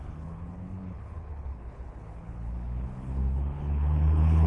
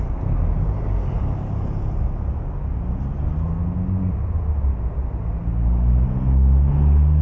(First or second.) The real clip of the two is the second